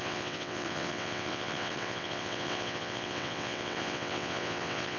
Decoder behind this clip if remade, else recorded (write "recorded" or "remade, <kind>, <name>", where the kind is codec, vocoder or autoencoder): remade, vocoder, WaveNeXt